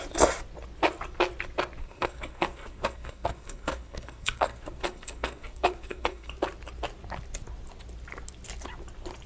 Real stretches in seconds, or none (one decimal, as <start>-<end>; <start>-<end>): 0.0-1.8; 6.3-9.3